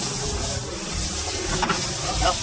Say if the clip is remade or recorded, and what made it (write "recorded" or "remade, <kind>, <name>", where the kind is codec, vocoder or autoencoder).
recorded